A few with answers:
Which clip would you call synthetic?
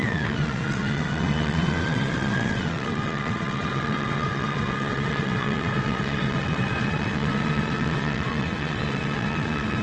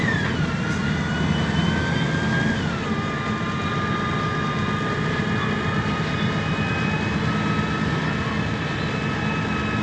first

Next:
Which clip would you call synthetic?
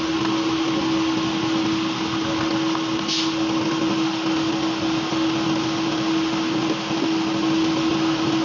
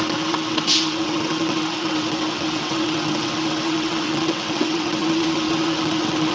second